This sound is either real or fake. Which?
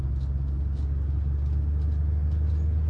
real